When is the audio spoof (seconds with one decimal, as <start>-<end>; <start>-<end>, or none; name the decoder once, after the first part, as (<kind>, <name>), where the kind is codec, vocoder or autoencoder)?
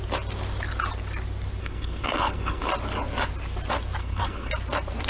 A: 1.6-2.7 (codec, SNAC); 4.0-4.5